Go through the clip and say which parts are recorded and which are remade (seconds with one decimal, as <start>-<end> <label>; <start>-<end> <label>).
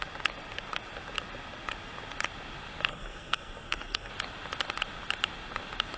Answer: 0.0-2.9 recorded; 2.9-4.1 remade; 4.1-6.0 recorded